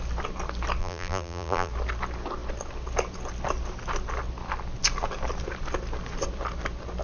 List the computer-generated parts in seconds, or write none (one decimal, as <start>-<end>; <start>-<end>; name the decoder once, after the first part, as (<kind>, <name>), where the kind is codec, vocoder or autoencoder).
0.8-1.7 (vocoder, BigVGAN v2)

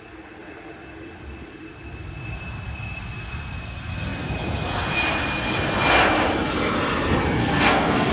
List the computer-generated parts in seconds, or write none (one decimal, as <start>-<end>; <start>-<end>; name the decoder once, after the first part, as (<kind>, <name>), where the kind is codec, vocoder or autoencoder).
7.4-8.1 (codec, SNAC)

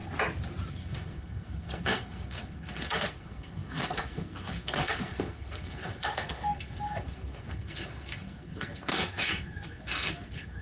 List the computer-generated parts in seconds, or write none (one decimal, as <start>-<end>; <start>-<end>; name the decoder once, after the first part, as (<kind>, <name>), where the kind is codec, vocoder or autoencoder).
0.7-10.6 (codec, SNAC)

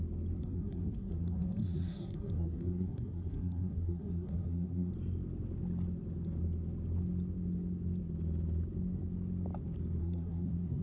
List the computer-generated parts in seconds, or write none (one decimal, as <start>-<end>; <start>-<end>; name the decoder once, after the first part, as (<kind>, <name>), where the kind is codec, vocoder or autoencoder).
0.4-4.9 (codec, SNAC); 10.0-10.8